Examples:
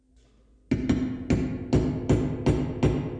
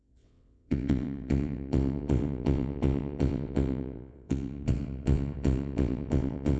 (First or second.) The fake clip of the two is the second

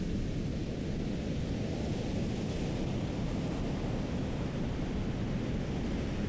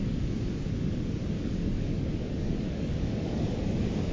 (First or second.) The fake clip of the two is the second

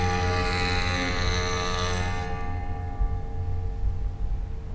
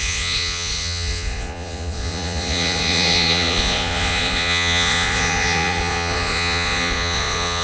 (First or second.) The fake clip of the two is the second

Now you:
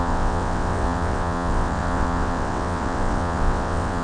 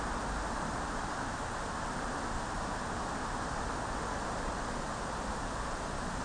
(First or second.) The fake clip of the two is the first